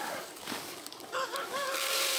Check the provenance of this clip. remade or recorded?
remade